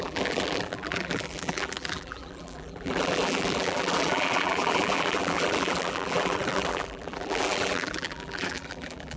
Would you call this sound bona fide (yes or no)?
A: no